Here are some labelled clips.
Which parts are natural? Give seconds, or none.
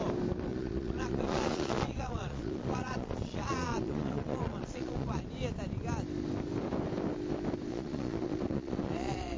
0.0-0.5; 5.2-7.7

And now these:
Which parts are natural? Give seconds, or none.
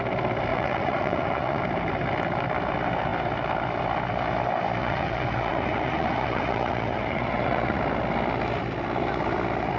0.0-0.5; 1.6-4.8; 7.8-9.8